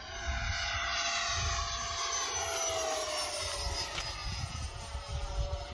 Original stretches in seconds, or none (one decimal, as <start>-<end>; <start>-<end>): 0.0-4.2; 4.8-5.7